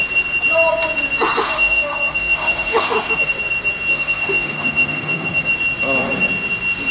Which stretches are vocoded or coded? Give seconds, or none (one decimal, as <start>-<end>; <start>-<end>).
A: 1.4-3.3; 3.9-5.5